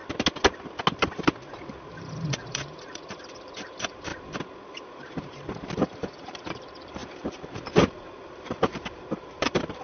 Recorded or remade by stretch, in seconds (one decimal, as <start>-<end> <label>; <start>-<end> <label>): 0.0-1.9 recorded; 1.9-4.1 remade; 4.1-4.7 recorded; 4.7-9.8 remade